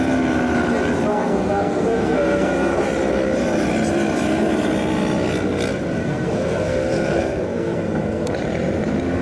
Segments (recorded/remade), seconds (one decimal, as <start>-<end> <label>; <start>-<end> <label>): 0.0-1.1 recorded; 1.1-2.8 remade; 2.8-6.0 recorded; 6.0-8.3 remade; 8.3-9.2 recorded